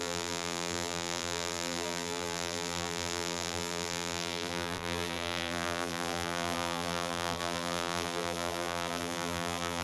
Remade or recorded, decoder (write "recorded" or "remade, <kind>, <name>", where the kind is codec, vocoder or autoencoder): remade, vocoder, BigVGAN v2